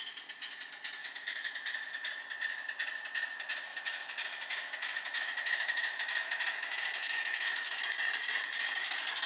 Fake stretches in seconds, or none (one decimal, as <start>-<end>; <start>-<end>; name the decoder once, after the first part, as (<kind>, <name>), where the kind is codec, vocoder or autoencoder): 1.0-2.1 (autoencoder, DAC-VAE); 3.7-7.8